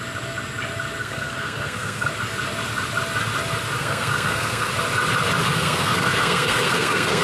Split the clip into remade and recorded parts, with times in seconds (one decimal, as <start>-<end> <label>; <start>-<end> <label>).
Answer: 0.0-1.0 recorded; 1.0-2.1 remade; 2.1-3.8 recorded; 3.8-4.7 remade; 4.7-5.4 recorded; 5.4-7.2 remade